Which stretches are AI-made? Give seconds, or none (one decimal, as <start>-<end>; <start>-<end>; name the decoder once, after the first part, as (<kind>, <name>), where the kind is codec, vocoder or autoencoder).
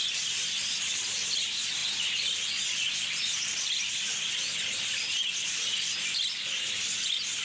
0.0-1.8 (vocoder, BigVGAN v2); 2.8-7.4